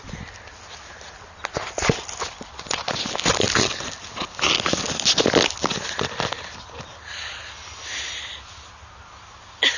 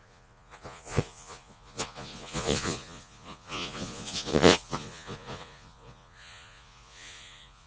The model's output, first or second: second